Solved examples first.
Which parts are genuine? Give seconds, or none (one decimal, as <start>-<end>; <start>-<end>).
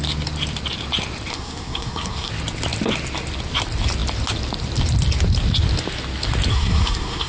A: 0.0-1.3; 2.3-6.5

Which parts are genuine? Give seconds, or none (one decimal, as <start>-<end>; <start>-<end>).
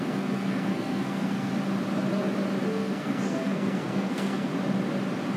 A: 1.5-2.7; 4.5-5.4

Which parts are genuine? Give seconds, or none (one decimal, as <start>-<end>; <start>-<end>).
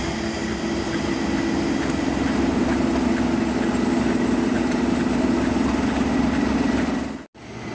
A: 0.0-7.7